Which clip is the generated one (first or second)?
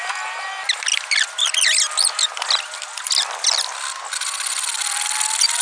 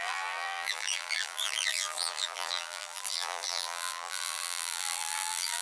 second